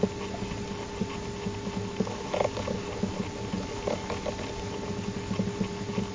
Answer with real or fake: real